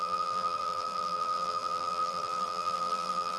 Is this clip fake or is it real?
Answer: fake